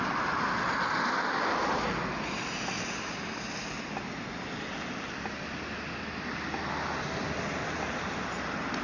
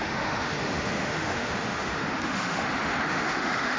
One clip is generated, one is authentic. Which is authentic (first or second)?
first